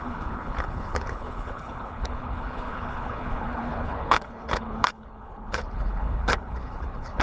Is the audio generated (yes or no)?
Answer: yes